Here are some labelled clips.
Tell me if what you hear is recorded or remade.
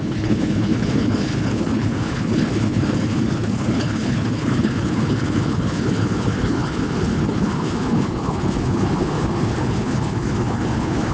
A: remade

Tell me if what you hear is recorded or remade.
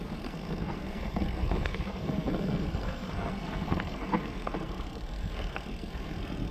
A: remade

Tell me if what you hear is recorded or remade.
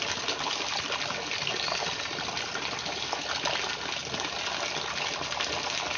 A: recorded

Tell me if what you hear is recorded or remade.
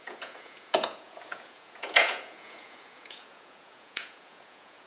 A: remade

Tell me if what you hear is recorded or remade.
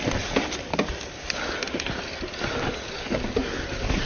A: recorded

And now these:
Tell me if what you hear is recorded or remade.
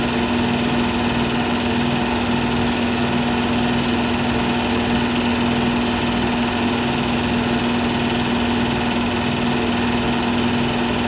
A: recorded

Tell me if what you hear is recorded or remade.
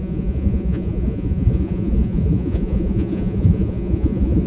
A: remade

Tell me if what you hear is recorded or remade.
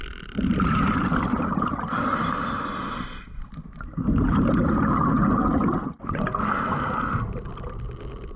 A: remade